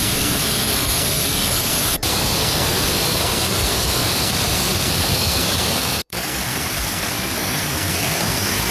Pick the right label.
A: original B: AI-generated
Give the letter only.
B